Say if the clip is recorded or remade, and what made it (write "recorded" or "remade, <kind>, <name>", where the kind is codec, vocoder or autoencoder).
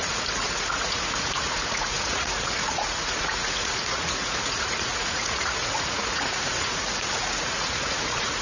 remade, vocoder, Vocos